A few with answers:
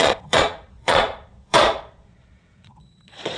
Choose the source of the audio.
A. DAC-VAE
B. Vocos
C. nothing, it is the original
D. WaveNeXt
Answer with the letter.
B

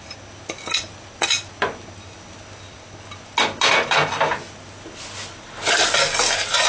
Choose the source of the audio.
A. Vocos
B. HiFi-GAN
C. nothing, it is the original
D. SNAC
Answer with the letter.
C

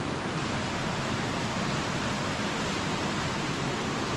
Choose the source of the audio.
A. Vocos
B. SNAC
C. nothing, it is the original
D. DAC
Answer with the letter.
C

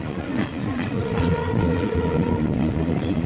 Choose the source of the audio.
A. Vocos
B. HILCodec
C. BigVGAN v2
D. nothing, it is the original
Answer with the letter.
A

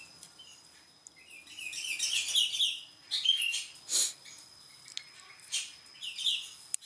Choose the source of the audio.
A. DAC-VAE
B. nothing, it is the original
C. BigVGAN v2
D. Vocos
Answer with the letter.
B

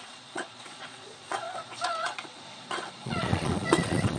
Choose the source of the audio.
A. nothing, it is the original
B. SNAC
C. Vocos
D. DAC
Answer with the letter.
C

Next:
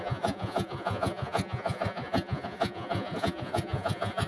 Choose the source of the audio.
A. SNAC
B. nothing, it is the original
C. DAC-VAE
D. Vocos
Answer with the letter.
D